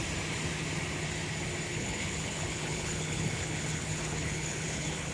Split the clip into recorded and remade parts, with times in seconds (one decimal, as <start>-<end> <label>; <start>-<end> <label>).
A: 0.0-1.7 recorded; 1.7-5.1 remade